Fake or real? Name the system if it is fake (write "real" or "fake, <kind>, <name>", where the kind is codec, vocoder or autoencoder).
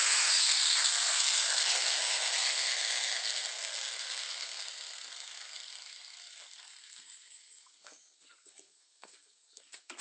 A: fake, codec, SNAC